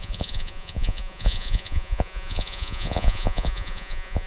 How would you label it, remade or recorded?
remade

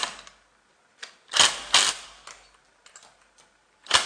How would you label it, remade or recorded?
recorded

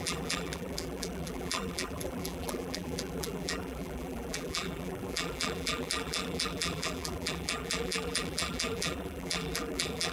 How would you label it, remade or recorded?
remade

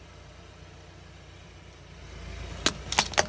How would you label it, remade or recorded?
recorded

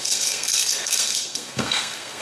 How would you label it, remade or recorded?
remade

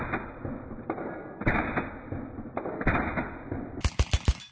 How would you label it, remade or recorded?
recorded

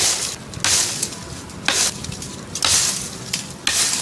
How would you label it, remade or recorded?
recorded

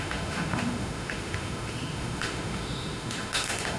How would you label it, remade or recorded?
remade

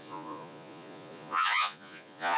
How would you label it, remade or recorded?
remade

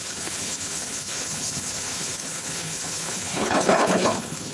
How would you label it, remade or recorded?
remade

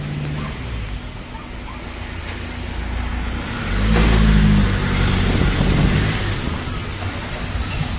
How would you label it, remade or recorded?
recorded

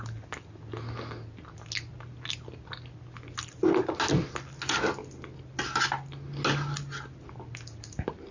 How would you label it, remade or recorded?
recorded